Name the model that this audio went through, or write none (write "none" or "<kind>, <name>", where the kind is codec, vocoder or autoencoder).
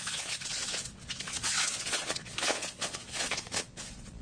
vocoder, Vocos